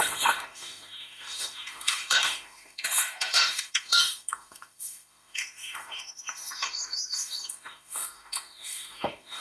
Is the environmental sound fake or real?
fake